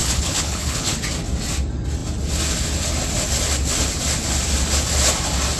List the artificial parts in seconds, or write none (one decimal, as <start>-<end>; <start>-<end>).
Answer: 0.0-1.0